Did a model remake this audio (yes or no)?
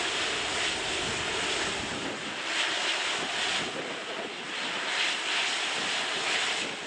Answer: no